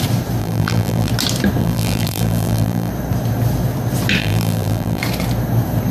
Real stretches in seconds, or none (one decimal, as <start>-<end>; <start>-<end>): 0.0-0.4; 1.1-1.6; 2.9-4.2; 5.0-5.9